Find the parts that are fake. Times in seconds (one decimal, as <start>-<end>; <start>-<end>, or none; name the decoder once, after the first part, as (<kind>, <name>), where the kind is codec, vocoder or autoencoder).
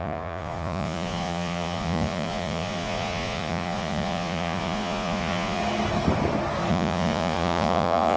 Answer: 0.0-5.6 (vocoder, Vocos); 6.7-8.2